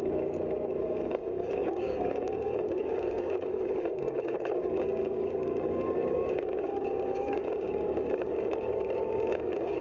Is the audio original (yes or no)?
no